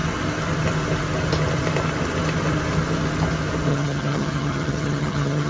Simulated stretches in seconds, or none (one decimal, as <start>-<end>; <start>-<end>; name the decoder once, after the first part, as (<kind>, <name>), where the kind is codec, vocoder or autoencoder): 3.7-5.5 (vocoder, HiFi-GAN)

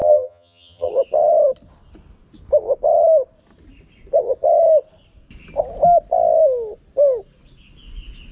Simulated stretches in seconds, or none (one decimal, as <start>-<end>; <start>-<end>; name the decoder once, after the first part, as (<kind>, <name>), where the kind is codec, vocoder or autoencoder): 0.0-0.9 (vocoder, HiFi-GAN)

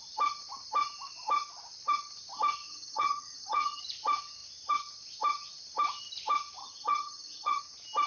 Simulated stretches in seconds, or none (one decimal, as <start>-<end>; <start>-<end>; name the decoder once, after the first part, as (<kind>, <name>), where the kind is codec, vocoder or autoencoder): 2.7-3.8 (vocoder, HiFi-GAN); 6.6-7.6